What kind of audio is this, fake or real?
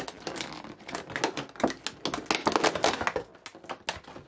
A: real